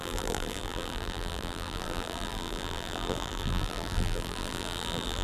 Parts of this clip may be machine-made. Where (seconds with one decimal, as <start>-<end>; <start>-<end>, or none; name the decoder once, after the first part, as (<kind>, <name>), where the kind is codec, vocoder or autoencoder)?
0.0-5.2 (vocoder, BigVGAN v2)